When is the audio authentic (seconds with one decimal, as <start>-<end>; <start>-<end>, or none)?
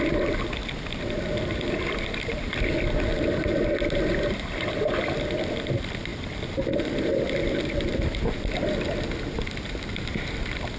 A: 0.0-3.1; 4.5-6.1; 7.4-7.9; 10.0-10.8